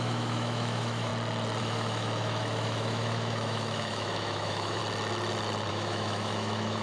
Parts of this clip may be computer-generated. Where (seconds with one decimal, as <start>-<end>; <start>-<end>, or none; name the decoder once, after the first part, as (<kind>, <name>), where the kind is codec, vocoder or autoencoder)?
0.0-1.1 (autoencoder, DAC-VAE); 1.6-4.8; 5.7-6.8